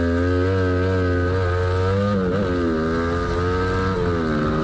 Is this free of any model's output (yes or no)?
yes